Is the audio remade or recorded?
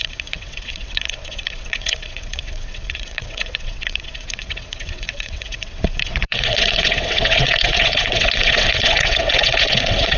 remade